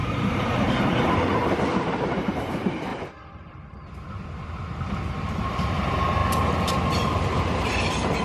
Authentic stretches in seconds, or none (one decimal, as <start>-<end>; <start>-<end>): 2.9-5.4; 6.2-7.7